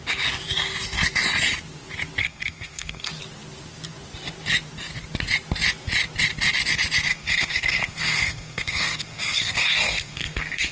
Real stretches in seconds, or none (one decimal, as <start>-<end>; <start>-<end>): 0.0-2.2; 3.1-7.1